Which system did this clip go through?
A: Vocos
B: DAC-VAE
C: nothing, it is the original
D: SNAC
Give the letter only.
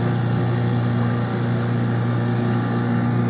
C